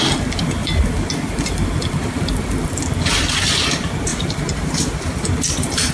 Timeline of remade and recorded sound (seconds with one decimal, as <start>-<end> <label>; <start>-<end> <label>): 0.0-5.9 remade